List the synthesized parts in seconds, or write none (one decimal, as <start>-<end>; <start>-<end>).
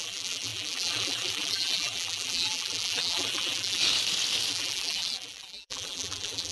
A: 0.0-3.8; 4.5-6.5